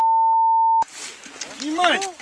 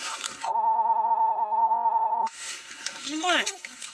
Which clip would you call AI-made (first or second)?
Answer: second